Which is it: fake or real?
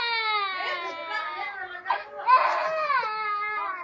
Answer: real